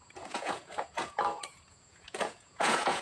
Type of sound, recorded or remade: remade